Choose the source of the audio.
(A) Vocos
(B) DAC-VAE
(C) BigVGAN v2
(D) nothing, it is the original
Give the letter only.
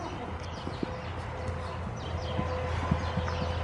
D